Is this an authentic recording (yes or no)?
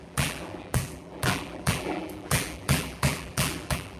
no